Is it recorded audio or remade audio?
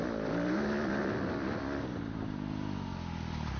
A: recorded